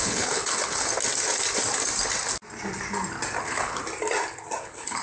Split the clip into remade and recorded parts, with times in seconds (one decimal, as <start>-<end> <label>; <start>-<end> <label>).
0.0-0.9 remade; 0.9-3.4 recorded; 3.4-3.8 remade; 3.8-4.6 recorded; 4.6-5.0 remade